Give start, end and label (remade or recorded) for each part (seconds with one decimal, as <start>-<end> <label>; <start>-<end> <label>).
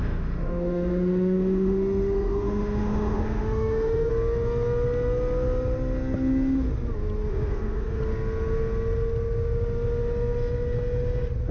0.0-4.1 remade; 4.1-7.3 recorded; 7.3-8.0 remade; 8.0-11.5 recorded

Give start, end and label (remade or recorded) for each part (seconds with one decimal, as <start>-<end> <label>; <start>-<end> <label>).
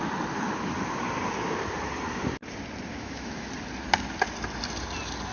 0.0-2.9 recorded; 2.9-3.5 remade; 3.5-5.3 recorded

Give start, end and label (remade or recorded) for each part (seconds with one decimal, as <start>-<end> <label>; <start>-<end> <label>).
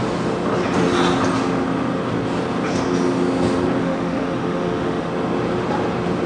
0.0-3.8 recorded; 3.8-5.1 remade; 5.1-6.3 recorded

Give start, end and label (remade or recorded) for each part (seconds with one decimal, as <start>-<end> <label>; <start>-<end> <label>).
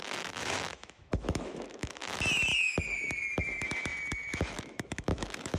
0.0-2.5 remade; 2.5-3.2 recorded; 3.2-5.6 remade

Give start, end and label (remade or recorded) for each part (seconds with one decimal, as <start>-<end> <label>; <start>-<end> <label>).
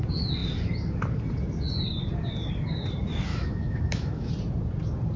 0.0-3.3 recorded; 3.3-4.3 remade; 4.3-5.2 recorded